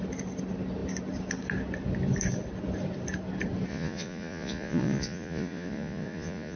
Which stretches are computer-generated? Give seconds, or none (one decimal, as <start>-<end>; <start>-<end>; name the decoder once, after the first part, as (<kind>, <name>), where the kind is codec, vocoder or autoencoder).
3.7-6.6 (vocoder, Vocos)